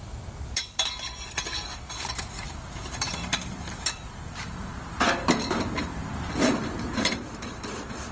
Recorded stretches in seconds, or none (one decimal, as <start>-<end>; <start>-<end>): 0.9-1.9